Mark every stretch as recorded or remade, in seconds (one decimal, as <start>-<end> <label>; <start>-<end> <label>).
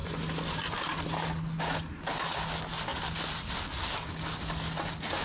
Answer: 0.0-5.2 recorded